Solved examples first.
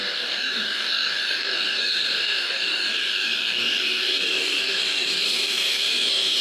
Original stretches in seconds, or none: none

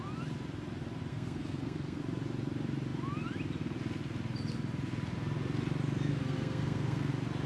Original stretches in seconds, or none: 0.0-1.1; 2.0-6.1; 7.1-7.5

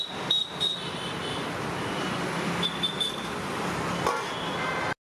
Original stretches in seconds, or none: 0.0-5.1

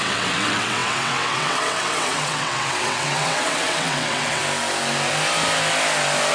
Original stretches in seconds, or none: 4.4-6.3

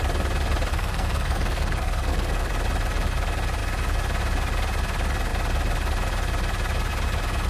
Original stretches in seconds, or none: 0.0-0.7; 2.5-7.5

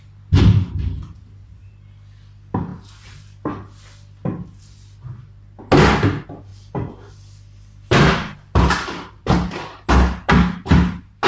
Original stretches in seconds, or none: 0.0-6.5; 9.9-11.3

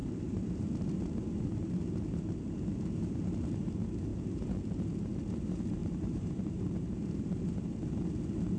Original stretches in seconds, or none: 0.7-5.8; 7.7-8.6

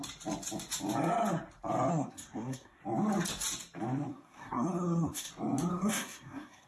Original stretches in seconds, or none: 0.0-1.9; 2.8-4.1; 5.3-5.7